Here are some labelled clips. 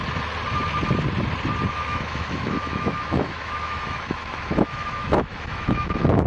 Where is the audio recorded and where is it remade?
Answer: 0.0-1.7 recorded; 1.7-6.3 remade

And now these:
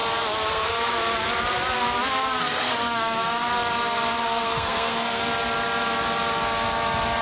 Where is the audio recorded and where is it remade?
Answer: 0.0-0.5 recorded; 0.5-0.9 remade; 0.9-2.4 recorded; 2.4-3.5 remade; 3.5-4.2 recorded; 4.2-5.2 remade; 5.2-7.2 recorded

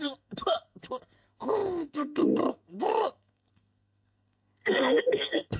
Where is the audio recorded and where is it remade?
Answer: 0.0-5.6 remade